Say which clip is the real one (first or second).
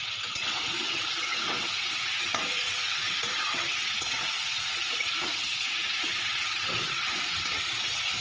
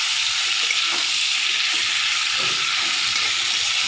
second